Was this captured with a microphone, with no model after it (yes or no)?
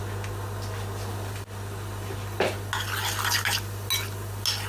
yes